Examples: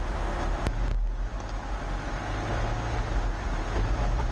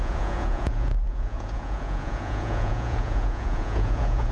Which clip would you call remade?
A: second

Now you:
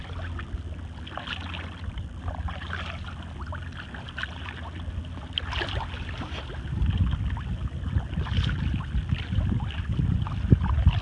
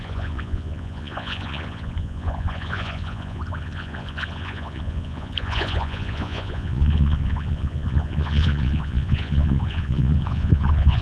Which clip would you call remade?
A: second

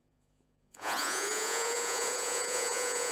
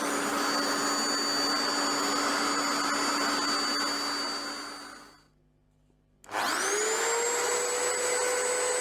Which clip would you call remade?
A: first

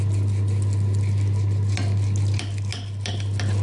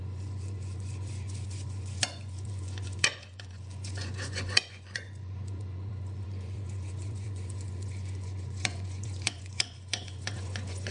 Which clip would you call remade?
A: second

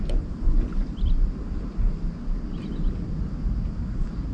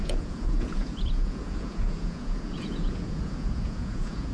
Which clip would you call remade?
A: second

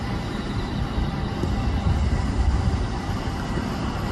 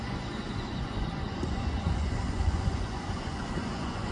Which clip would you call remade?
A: second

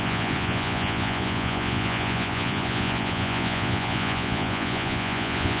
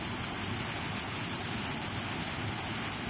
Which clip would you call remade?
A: first